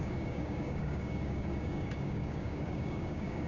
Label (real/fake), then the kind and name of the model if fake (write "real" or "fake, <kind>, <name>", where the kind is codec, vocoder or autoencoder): fake, codec, DAC